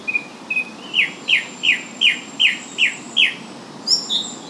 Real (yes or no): yes